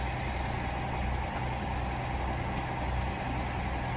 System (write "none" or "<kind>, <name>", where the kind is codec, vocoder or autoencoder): none